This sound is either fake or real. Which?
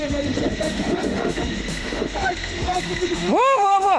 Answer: fake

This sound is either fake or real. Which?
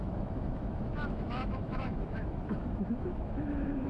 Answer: fake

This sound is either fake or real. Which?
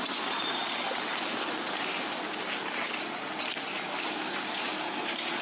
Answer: real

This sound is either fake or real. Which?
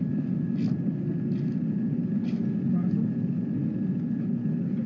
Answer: real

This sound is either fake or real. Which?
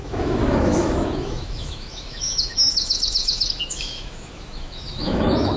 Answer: fake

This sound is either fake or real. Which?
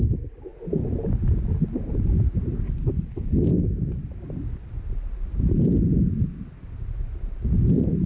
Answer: real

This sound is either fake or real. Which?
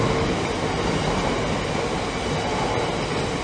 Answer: real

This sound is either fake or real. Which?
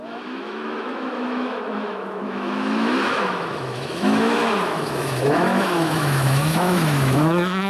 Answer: fake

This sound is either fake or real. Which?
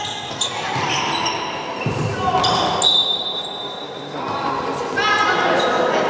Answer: real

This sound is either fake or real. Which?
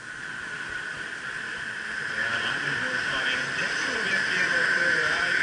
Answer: real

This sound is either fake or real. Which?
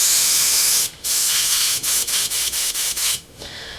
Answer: fake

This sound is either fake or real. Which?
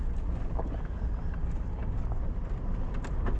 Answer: real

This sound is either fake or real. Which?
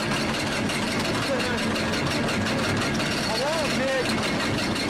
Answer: real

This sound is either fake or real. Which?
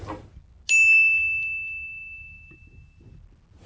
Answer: real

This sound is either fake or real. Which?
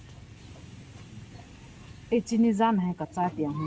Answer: real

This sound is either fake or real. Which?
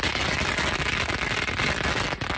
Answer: real